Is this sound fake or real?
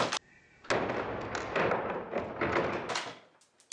real